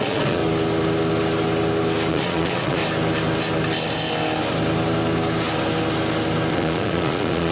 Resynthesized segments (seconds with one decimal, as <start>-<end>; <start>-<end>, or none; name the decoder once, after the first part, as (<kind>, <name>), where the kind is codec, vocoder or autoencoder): 0.0-0.4 (vocoder, Vocos); 2.1-2.8; 6.5-7.5